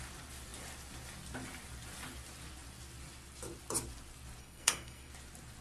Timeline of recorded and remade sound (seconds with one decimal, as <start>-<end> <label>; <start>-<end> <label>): 0.0-4.4 recorded; 4.4-5.1 remade; 5.1-5.6 recorded